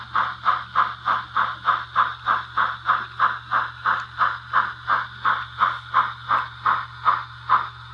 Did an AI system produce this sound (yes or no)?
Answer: no